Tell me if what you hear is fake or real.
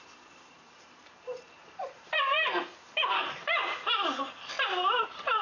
fake